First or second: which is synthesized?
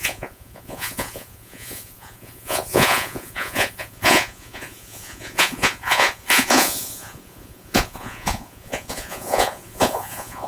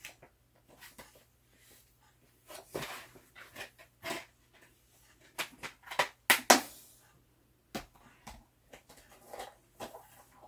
first